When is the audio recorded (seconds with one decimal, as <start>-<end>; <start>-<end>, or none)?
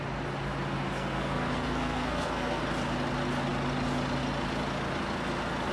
0.0-0.9; 2.6-5.7